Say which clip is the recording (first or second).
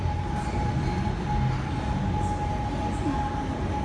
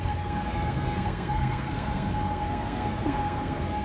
first